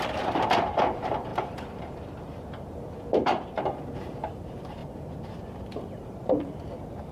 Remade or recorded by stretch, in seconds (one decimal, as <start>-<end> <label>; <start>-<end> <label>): 0.0-4.8 remade; 4.8-5.8 recorded; 5.8-7.1 remade